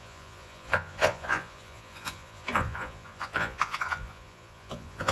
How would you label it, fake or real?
fake